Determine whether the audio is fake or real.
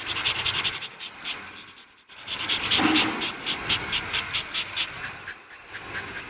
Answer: real